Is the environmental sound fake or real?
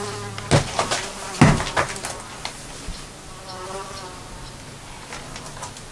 real